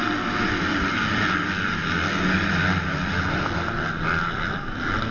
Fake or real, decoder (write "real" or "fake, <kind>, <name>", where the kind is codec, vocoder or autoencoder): real